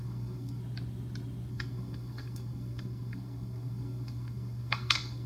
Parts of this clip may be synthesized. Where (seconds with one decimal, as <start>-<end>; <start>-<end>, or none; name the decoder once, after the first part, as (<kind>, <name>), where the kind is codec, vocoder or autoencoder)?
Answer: 0.0-0.6 (codec, SNAC); 1.5-5.3